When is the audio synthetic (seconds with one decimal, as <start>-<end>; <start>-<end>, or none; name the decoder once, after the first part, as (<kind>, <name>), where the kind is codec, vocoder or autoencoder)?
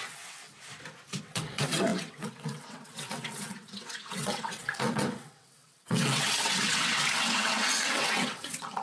0.0-0.4 (vocoder, WaveNeXt); 1.2-8.8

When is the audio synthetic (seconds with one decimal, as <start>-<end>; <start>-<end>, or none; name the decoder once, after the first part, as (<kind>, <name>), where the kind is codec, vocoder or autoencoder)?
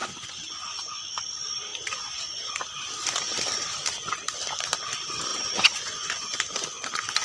0.0-1.1 (vocoder, Vocos); 5.3-6.4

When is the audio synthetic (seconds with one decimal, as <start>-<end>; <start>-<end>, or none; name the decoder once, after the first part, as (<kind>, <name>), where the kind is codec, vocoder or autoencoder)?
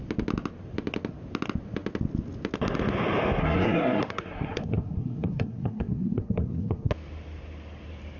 3.4-6.9 (codec, SNAC)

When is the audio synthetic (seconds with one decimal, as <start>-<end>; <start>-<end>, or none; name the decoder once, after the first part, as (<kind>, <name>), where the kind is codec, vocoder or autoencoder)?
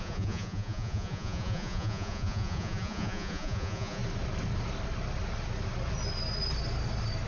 0.0-4.0 (vocoder, Vocos)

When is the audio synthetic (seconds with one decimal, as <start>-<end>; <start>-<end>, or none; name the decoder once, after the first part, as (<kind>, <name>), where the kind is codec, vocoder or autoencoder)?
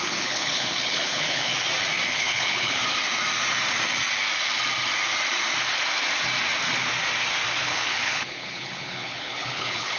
0.0-1.5 (codec, HILCodec); 2.1-2.8; 7.6-10.0